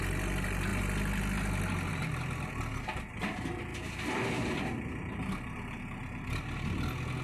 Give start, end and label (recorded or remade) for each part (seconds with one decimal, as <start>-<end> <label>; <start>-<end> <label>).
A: 0.0-7.2 recorded